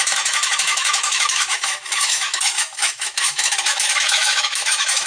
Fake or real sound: fake